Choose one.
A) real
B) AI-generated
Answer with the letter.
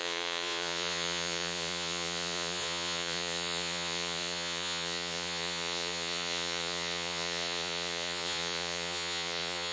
B